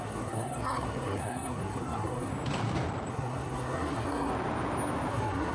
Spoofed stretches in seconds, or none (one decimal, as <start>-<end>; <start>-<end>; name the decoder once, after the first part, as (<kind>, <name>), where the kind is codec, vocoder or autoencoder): 0.0-2.3 (codec, SNAC); 3.1-4.3; 5.1-5.5